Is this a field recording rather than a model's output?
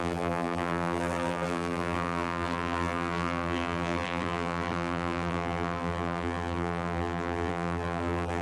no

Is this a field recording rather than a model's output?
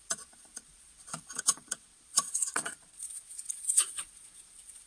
no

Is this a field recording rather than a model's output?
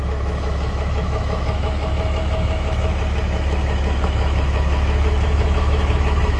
no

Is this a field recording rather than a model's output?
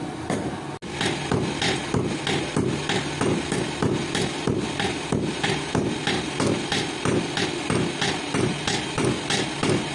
yes